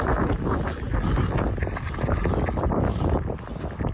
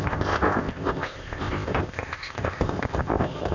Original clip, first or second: first